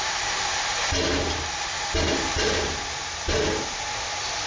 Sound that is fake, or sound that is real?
real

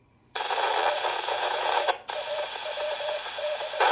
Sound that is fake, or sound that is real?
fake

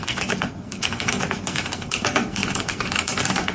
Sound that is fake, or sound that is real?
fake